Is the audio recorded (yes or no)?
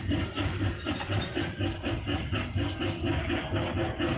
yes